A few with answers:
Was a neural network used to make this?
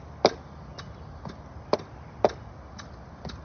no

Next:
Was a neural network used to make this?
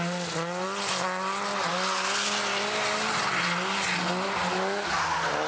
no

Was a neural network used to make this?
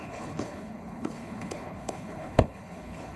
yes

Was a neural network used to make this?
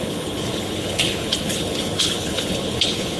yes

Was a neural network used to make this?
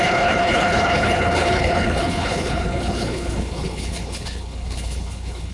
yes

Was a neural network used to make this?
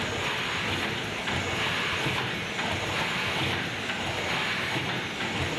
no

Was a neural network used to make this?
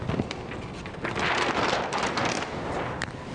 no